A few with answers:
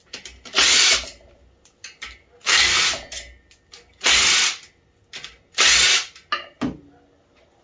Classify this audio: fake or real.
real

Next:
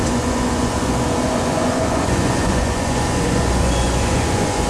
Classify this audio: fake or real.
fake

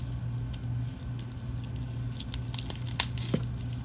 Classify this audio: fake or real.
real